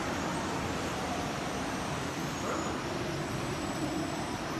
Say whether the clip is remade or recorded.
remade